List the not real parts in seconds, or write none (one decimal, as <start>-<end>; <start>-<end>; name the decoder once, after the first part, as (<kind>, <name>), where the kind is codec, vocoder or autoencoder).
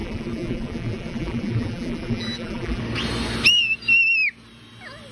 0.0-2.8 (vocoder, BigVGAN v2)